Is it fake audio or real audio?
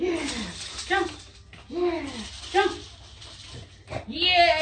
real